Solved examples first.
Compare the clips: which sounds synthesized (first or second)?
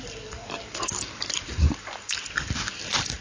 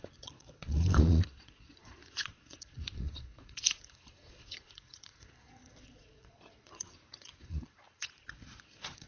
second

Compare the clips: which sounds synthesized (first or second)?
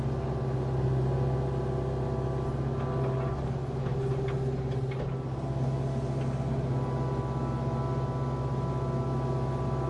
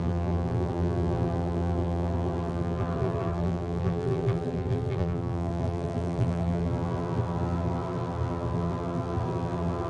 second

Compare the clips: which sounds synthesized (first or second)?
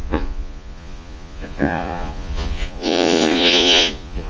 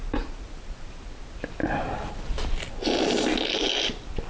first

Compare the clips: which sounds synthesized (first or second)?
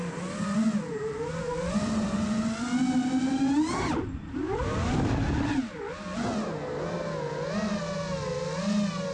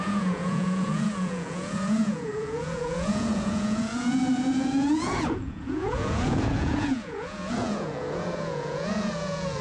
second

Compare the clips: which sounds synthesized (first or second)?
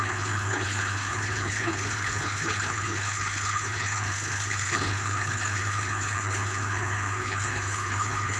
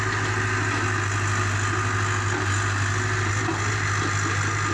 first